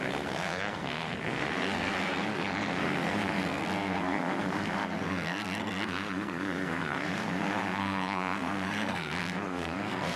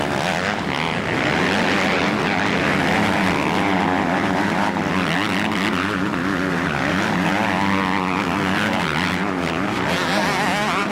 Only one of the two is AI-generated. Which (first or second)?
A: first